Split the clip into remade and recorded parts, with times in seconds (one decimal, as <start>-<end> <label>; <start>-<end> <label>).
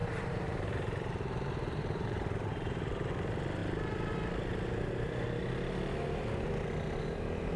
0.0-3.1 remade; 3.1-7.6 recorded